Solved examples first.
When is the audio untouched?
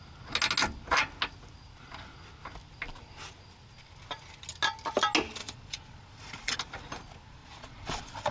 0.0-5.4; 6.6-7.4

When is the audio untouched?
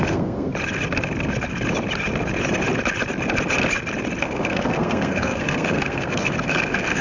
0.5-4.2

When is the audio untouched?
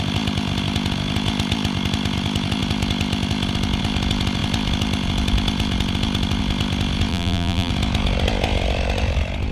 0.0-7.1; 7.7-9.5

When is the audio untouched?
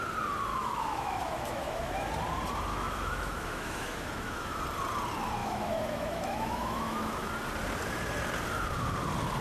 0.0-0.5; 2.1-2.7; 4.6-5.4; 7.3-9.4